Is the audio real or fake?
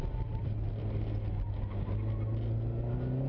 real